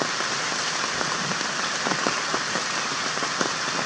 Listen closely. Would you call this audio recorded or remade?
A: recorded